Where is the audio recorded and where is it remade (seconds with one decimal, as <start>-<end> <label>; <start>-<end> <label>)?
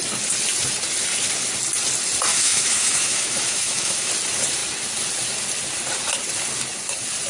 0.0-2.3 recorded; 2.3-4.1 remade; 4.1-7.3 recorded